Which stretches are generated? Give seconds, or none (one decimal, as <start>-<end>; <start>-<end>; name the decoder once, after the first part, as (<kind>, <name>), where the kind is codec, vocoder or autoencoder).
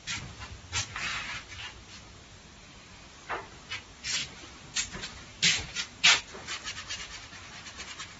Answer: 4.2-6.2 (vocoder, BigVGAN v2); 7.0-7.7